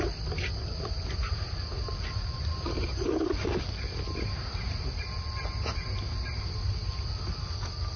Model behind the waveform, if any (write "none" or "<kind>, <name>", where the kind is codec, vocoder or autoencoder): none